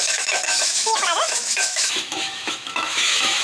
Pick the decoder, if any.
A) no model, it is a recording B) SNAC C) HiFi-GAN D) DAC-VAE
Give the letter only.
D